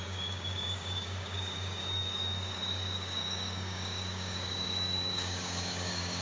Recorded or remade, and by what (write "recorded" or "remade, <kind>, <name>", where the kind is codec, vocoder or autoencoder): remade, codec, DAC